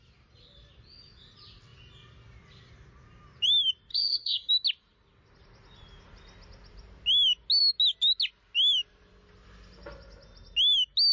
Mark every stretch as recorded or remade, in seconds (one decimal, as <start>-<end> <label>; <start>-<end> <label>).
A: 0.0-3.9 recorded; 3.9-4.5 remade; 4.5-11.1 recorded